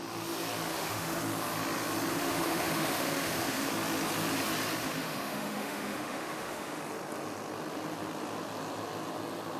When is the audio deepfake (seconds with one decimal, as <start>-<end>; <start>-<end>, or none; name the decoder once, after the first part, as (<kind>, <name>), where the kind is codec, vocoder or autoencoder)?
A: 0.7-1.2 (autoencoder, DAC-VAE); 2.1-3.7; 4.8-6.8